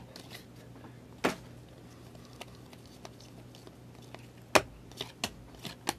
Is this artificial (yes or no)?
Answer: no